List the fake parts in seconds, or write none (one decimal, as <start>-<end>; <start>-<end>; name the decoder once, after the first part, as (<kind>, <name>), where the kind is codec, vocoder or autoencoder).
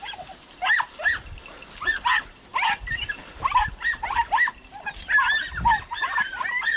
none